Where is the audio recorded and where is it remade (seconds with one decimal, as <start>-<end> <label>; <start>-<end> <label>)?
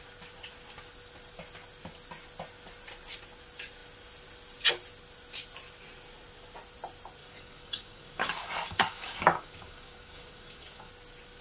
0.0-7.2 recorded; 7.2-10.9 remade; 10.9-11.4 recorded